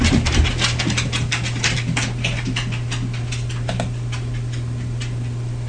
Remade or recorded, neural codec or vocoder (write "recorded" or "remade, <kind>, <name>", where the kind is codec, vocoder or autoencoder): recorded